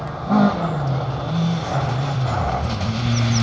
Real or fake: real